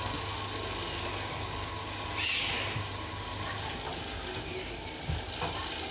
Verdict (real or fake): real